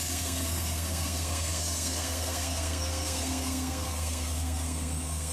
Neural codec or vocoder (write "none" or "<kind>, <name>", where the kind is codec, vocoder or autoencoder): codec, SNAC